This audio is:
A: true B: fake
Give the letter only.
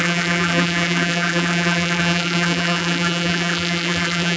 B